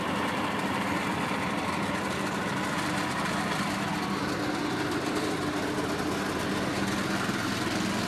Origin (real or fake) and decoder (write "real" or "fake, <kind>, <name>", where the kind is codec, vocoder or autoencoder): real